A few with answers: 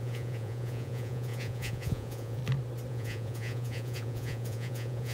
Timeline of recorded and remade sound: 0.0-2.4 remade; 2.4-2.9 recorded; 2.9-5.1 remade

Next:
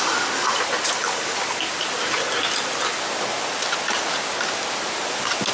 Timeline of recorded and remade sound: 0.0-5.5 recorded

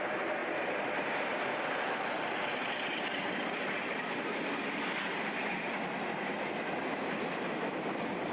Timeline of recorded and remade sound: 0.0-8.3 recorded

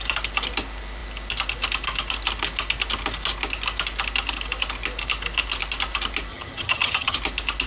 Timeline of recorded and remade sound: 0.0-6.3 recorded; 6.3-7.2 remade; 7.2-7.7 recorded